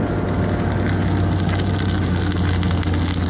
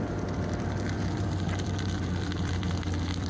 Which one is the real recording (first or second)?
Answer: first